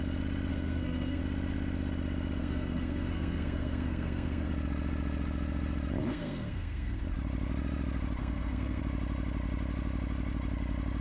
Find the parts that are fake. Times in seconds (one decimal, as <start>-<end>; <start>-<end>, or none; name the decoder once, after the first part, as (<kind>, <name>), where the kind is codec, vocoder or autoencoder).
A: 0.5-1.2 (codec, SNAC); 2.4-4.5; 6.0-7.0; 8.2-8.8